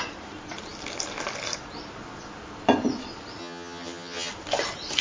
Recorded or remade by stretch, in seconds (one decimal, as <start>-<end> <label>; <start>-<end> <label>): 0.0-3.4 recorded; 3.4-4.3 remade; 4.3-5.0 recorded